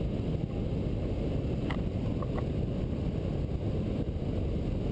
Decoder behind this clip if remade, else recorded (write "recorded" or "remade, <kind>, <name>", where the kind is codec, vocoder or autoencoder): recorded